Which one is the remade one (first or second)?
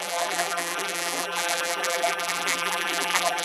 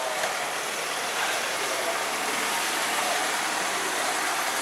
first